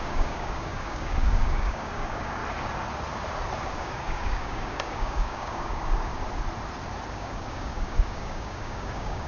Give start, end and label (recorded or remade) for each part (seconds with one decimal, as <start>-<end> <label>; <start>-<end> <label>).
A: 0.0-2.4 remade; 2.4-3.8 recorded; 3.8-6.1 remade; 6.1-7.1 recorded; 7.1-9.3 remade